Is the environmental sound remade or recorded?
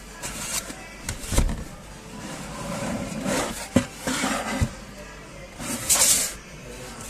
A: recorded